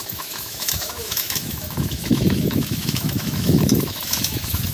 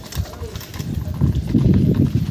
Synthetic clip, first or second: first